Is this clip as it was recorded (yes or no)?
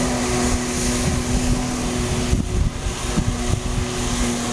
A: yes